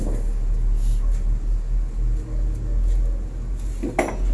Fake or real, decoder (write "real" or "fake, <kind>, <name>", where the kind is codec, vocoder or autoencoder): real